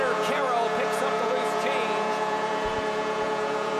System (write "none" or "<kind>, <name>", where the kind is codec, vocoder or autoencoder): vocoder, Vocos